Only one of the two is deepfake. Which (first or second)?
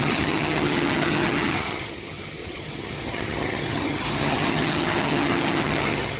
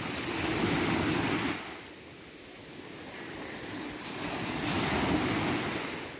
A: first